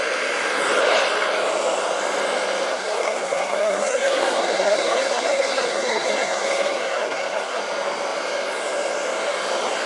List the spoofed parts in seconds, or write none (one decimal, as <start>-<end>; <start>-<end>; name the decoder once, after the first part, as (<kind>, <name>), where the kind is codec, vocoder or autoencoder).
2.7-7.6 (codec, SNAC)